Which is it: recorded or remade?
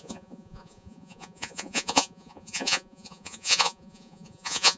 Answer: remade